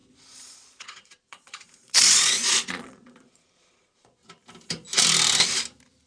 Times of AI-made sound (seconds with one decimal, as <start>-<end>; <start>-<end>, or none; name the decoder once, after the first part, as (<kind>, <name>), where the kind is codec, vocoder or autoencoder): 0.0-4.2 (vocoder, Vocos)